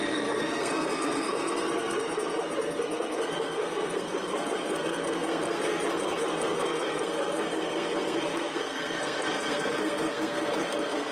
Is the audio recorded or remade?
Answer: remade